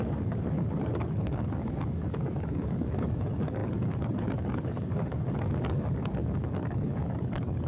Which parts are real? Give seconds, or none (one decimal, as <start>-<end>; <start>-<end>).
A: none